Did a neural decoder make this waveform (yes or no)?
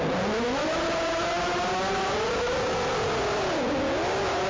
no